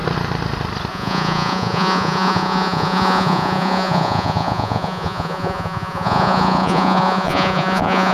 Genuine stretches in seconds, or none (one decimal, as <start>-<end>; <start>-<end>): 0.0-0.9